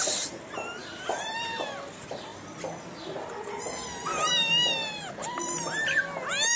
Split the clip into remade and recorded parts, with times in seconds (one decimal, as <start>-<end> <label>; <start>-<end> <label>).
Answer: 0.0-6.6 recorded